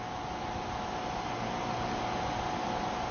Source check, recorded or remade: recorded